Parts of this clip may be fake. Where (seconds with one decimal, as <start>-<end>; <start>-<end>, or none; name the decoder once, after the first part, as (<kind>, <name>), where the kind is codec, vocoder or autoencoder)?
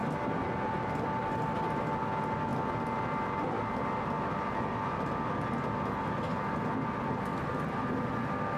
0.0-1.5 (vocoder, BigVGAN v2); 7.3-7.9